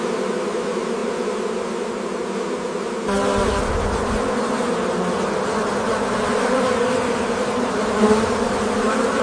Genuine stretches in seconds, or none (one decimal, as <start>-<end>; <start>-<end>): 0.0-5.9